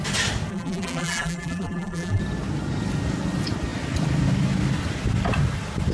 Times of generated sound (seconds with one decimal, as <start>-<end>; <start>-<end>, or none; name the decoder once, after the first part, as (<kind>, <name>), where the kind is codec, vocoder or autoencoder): 0.5-2.2 (vocoder, BigVGAN v2)